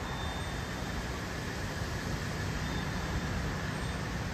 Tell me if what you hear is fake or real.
real